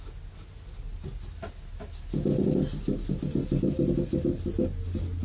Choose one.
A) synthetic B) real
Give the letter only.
B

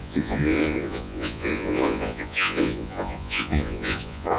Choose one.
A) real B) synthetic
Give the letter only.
B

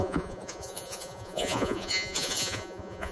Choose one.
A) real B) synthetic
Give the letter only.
B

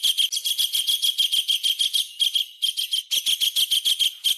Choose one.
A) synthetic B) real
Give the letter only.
B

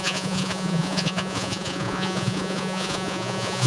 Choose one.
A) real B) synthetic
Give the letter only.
B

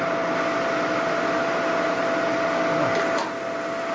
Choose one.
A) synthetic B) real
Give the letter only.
B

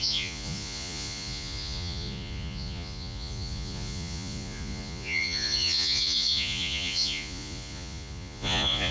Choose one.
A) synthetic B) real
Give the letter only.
A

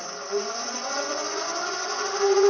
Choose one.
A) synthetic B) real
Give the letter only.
A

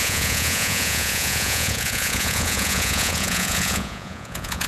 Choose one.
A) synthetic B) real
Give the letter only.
A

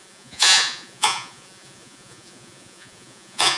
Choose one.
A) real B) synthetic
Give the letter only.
B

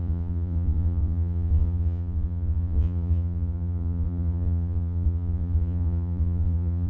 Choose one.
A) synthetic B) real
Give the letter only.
A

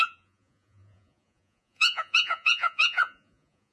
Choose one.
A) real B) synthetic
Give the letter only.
B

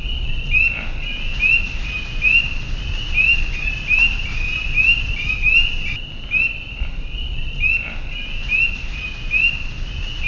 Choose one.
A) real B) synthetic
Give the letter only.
A